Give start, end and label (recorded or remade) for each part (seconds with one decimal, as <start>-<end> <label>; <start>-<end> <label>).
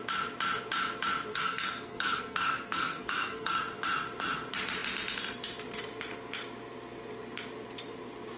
0.0-1.3 recorded; 1.3-3.6 remade; 3.6-8.4 recorded